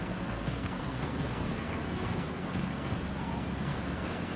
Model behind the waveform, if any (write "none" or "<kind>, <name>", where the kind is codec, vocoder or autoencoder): codec, SNAC